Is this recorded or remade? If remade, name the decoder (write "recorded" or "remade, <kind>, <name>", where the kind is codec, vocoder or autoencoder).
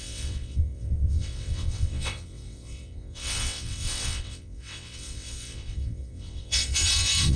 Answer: remade, vocoder, WaveNeXt